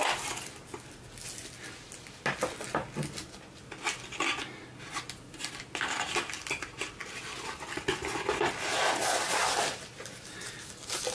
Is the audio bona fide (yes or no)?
yes